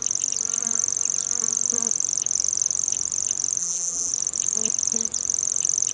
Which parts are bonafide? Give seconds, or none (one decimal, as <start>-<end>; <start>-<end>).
0.0-3.6; 4.1-5.9